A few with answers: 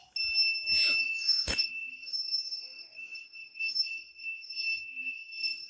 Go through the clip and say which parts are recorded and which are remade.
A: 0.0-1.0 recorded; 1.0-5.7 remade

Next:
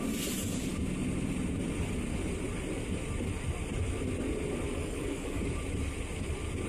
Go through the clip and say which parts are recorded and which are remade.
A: 0.0-4.8 recorded; 4.8-5.5 remade; 5.5-6.7 recorded

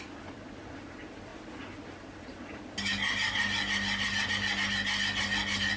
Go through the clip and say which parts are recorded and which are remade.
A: 0.0-5.8 recorded

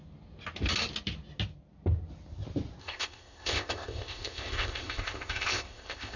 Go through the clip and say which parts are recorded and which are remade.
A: 0.0-2.8 recorded; 2.8-6.2 remade

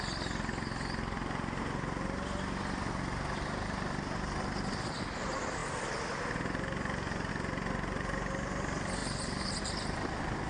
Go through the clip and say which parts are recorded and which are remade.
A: 0.0-10.5 recorded

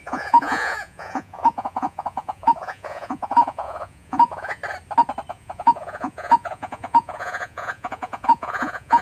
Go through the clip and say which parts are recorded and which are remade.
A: 0.0-4.6 remade; 4.6-5.3 recorded; 5.3-9.0 remade

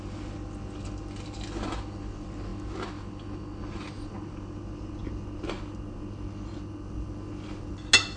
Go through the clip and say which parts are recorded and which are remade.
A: 0.0-8.2 recorded

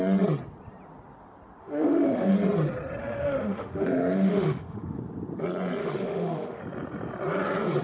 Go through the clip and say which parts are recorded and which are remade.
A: 0.0-1.6 recorded; 1.6-2.3 remade; 2.3-3.0 recorded; 3.0-5.0 remade; 5.0-5.8 recorded; 5.8-6.6 remade; 6.6-7.8 recorded